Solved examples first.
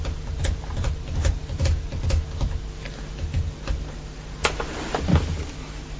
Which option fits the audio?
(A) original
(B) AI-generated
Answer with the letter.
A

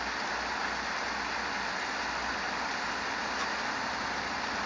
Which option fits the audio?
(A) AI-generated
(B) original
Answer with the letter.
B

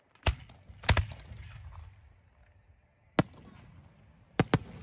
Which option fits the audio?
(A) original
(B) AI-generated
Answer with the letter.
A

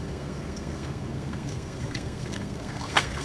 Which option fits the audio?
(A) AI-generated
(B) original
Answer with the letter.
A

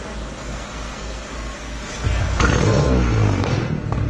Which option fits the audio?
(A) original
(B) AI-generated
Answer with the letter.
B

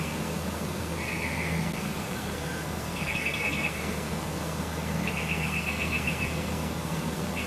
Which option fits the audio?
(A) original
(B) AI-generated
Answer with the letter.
B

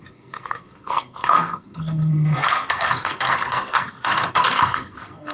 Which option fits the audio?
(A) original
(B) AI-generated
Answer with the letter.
B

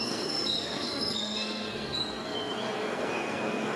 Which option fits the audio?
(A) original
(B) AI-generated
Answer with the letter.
B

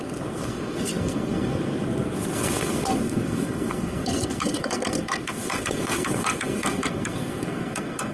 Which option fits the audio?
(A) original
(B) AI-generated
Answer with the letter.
B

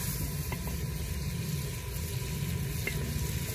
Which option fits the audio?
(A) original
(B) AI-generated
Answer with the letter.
A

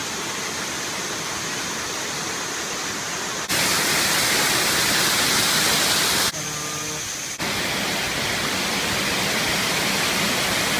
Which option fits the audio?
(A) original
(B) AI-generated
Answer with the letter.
A